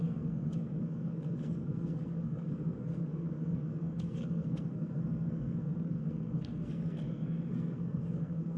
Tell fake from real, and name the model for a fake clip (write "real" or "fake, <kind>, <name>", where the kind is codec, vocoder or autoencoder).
fake, codec, SNAC